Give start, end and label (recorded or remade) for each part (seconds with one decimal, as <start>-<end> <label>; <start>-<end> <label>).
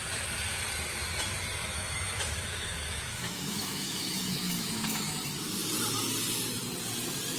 0.0-1.6 recorded; 1.6-5.1 remade; 5.1-7.4 recorded